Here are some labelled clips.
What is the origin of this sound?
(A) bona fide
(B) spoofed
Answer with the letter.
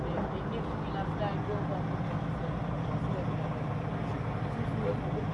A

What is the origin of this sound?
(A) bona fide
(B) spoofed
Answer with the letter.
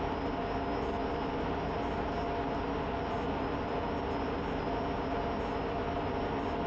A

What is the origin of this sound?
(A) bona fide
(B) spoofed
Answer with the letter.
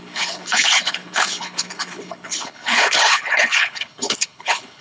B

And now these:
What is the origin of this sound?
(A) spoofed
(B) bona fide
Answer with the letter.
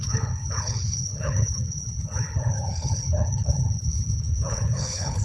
A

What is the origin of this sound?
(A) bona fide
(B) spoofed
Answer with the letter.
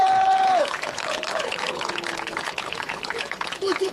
B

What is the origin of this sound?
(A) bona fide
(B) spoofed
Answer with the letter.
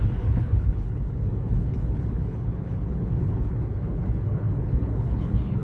B